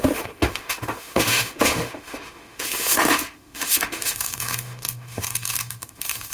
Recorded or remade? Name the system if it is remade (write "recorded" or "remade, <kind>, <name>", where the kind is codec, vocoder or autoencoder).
remade, autoencoder, DAC-VAE